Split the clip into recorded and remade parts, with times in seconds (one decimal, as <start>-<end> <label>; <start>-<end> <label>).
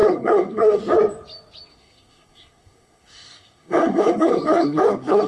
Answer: 0.0-0.8 remade; 0.8-1.7 recorded; 1.7-5.3 remade